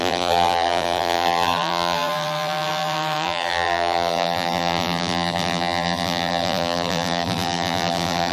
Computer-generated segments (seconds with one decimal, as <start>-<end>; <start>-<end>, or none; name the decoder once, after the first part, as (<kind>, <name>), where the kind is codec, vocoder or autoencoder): 0.0-8.3 (vocoder, BigVGAN v2)